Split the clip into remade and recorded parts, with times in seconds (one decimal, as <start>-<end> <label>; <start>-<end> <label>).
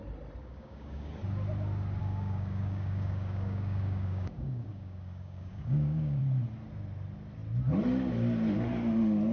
0.0-0.4 recorded; 0.4-1.1 remade; 1.1-2.0 recorded; 2.0-6.2 remade; 6.2-9.3 recorded